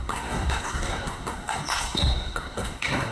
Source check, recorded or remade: remade